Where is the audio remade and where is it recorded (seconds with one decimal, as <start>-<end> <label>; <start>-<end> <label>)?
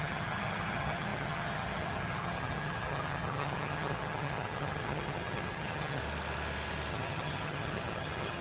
0.0-6.0 remade; 6.0-6.9 recorded; 6.9-8.4 remade